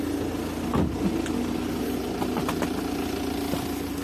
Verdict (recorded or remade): recorded